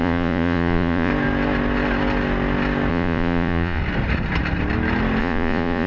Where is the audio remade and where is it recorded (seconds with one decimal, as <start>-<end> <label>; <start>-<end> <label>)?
0.0-1.1 remade; 1.1-2.9 recorded; 2.9-3.8 remade; 3.8-5.2 recorded; 5.2-5.9 remade